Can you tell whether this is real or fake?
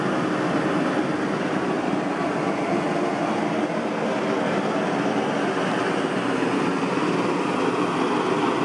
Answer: real